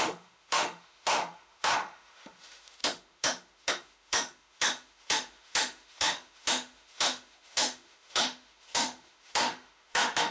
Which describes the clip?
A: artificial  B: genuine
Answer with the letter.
A